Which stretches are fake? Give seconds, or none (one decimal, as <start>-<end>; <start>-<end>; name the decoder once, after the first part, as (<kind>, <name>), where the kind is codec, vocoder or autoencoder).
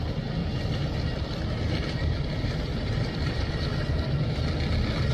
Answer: 0.4-3.5 (vocoder, BigVGAN v2)